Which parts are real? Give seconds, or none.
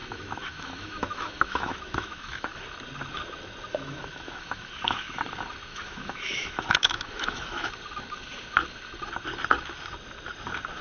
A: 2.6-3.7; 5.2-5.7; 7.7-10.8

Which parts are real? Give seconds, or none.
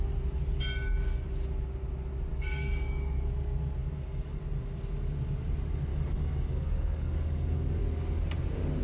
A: 0.0-2.3; 3.3-3.8; 4.4-5.9; 7.8-8.8